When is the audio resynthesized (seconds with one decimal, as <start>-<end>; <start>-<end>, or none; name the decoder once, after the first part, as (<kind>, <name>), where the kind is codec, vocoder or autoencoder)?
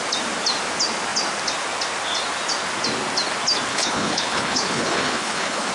3.7-5.7 (codec, HILCodec)